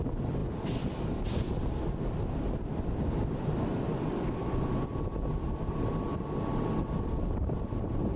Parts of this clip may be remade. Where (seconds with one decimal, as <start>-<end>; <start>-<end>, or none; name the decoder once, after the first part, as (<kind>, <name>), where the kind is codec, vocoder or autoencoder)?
0.0-0.4 (vocoder, BigVGAN v2); 4.1-4.9; 5.7-8.2